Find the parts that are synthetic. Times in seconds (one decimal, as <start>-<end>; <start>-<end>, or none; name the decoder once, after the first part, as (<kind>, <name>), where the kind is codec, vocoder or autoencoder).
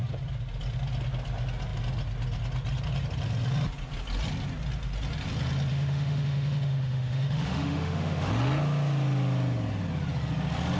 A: 5.7-8.3 (autoencoder, DAC-VAE)